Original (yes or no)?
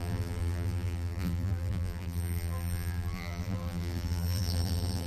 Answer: no